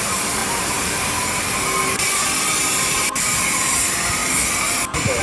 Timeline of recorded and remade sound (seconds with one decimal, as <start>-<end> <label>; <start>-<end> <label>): 0.0-0.4 recorded; 0.4-1.4 remade; 1.4-2.6 recorded; 2.6-3.4 remade; 3.4-5.2 recorded